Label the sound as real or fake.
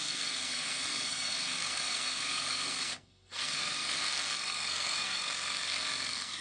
fake